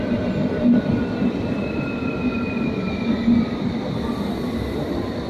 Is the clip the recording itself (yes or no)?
yes